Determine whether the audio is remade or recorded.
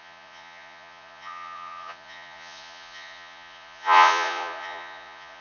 remade